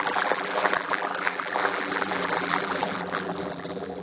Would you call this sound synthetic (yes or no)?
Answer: yes